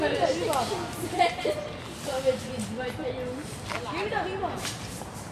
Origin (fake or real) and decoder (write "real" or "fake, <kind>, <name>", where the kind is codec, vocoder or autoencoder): real